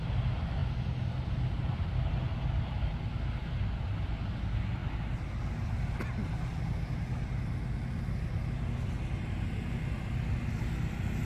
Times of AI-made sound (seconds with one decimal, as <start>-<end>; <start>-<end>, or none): none